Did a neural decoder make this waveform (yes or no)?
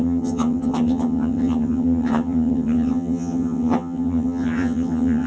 yes